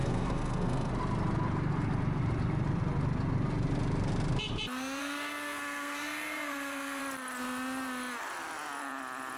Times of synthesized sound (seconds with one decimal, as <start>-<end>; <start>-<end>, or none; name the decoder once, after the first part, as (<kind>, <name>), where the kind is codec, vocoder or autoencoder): 0.0-0.9 (codec, SNAC); 5.0-7.0